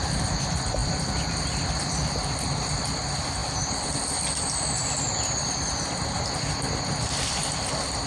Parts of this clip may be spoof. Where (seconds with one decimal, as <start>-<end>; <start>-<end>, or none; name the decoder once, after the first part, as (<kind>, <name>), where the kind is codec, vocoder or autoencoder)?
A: none